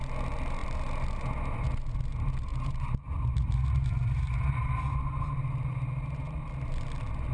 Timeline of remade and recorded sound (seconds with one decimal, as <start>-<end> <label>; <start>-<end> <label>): 0.0-2.5 recorded; 2.5-6.4 remade; 6.4-7.3 recorded